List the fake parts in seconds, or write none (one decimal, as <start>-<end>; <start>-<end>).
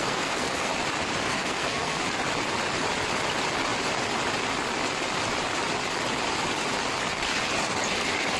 0.0-0.7; 1.2-2.0